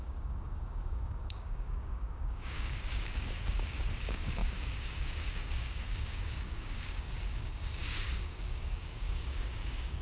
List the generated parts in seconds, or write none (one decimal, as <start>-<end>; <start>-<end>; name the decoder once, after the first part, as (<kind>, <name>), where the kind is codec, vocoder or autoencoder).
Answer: 0.0-10.0 (codec, DAC)